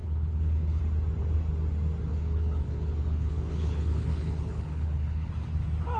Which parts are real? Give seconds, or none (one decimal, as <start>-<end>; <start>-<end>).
0.8-2.1; 5.3-6.0